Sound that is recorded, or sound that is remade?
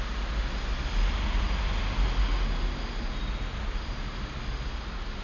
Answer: recorded